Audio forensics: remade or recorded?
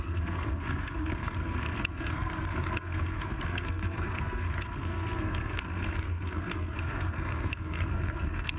remade